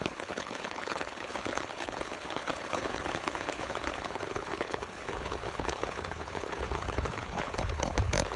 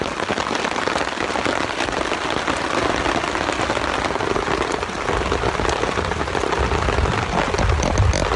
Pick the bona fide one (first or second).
second